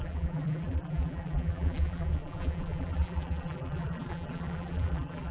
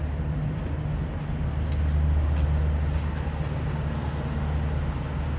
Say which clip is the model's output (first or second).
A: first